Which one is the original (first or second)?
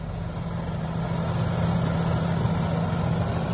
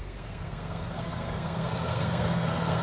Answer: first